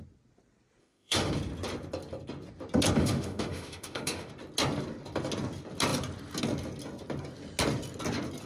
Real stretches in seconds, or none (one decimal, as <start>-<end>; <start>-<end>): 0.0-0.8; 1.3-3.0; 4.3-8.5